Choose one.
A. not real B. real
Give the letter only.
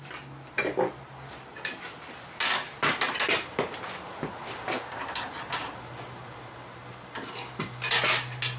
B